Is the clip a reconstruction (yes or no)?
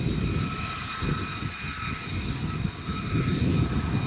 no